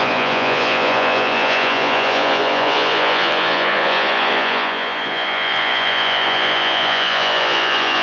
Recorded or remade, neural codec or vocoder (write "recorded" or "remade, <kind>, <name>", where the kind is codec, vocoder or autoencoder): remade, vocoder, Vocos